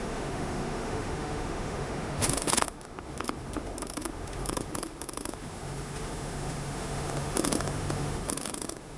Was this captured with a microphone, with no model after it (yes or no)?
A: no